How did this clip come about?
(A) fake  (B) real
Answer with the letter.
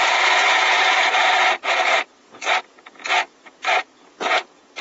A